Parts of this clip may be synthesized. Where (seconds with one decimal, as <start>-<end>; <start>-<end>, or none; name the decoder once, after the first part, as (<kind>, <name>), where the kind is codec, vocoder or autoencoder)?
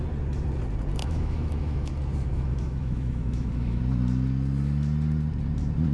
1.0-1.9 (autoencoder, DAC-VAE); 2.3-3.8